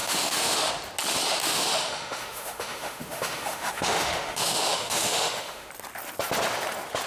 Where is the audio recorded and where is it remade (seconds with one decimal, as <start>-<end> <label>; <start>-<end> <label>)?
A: 0.0-0.7 remade; 0.7-1.4 recorded; 1.4-5.7 remade; 5.7-7.1 recorded

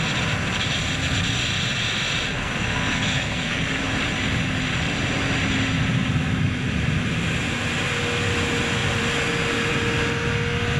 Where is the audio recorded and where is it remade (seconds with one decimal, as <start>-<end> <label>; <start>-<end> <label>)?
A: 0.0-2.3 recorded; 2.3-3.8 remade; 3.8-10.8 recorded

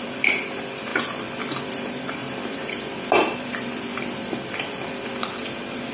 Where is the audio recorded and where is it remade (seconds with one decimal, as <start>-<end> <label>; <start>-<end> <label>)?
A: 0.0-2.2 remade; 2.2-2.7 recorded; 2.7-5.9 remade

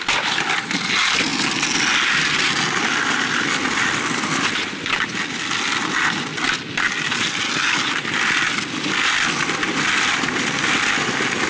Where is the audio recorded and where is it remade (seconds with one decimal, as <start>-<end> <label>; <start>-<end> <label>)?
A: 0.0-11.5 recorded

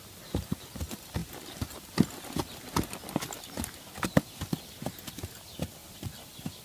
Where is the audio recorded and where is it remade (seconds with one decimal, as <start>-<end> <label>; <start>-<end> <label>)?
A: 0.0-5.8 recorded; 5.8-6.6 remade

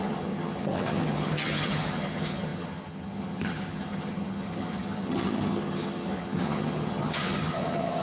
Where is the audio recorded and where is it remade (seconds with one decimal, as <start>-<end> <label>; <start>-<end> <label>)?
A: 0.0-8.0 remade

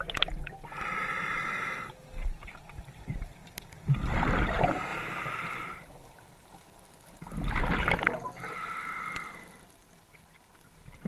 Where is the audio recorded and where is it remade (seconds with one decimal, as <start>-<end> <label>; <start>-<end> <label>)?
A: 0.0-11.1 recorded

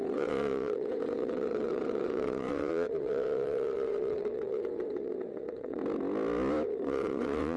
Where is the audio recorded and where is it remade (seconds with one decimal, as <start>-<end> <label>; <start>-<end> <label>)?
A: 0.0-5.8 remade; 5.8-6.7 recorded; 6.7-7.6 remade